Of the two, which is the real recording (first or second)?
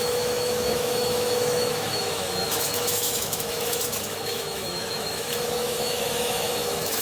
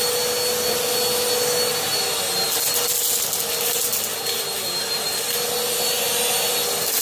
second